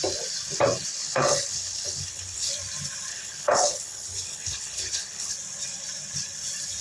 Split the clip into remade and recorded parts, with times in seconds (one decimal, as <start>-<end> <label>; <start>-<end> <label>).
0.0-0.9 recorded; 0.9-2.5 remade; 2.5-3.1 recorded; 3.1-5.3 remade; 5.3-6.8 recorded